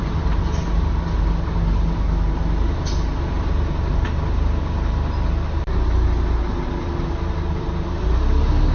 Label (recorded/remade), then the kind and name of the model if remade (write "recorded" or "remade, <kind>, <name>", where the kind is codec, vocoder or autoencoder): recorded